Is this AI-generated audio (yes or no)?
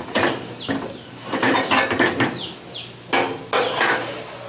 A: no